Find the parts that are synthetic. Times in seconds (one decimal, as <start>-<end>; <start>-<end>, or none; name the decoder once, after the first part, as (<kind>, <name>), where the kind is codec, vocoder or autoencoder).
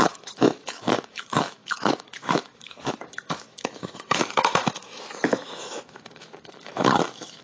0.0-7.4 (autoencoder, DAC-VAE)